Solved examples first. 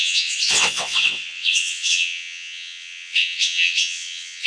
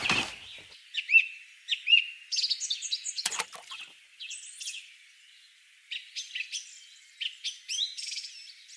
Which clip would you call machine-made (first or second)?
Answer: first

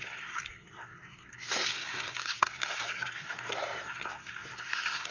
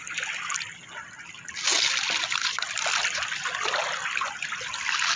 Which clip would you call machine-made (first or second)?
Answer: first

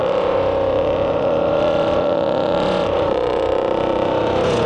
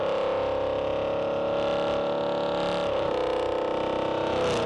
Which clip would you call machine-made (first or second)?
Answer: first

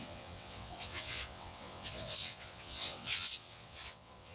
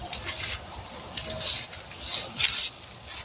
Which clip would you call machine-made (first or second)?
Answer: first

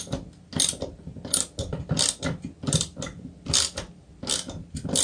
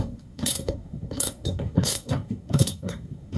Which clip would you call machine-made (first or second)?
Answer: second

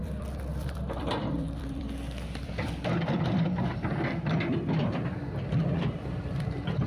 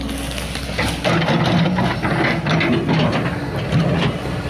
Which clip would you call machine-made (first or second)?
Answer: first